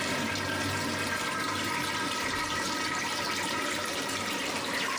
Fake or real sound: fake